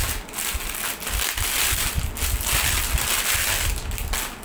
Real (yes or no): yes